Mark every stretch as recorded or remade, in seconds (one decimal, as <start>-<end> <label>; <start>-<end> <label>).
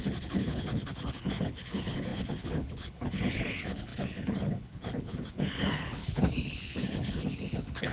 0.0-7.9 remade